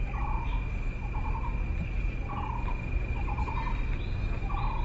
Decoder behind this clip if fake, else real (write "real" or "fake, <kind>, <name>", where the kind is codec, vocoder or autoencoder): real